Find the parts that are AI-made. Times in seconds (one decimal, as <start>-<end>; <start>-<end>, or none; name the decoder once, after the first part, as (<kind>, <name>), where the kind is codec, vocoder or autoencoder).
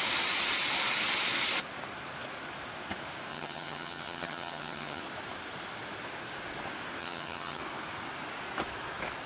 3.3-5.0 (vocoder, HiFi-GAN); 7.0-7.6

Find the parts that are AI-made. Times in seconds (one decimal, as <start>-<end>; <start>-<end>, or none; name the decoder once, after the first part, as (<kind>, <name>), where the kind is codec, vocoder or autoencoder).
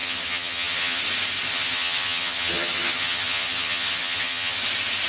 0.0-1.0 (vocoder, HiFi-GAN); 1.5-4.6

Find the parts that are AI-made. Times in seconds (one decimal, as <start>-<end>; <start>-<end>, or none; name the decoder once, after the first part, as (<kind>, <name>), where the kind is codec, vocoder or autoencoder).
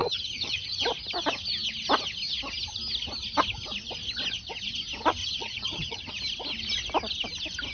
0.0-0.8 (vocoder, HiFi-GAN); 5.2-6.1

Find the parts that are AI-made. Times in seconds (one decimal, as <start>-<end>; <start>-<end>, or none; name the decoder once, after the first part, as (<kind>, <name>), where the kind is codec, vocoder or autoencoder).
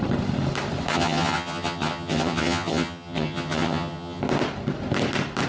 0.9-4.2 (vocoder, HiFi-GAN)